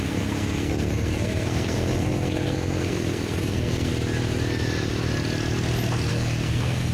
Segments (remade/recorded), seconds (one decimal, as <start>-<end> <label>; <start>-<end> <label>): 0.0-3.9 remade; 3.9-6.1 recorded; 6.1-6.9 remade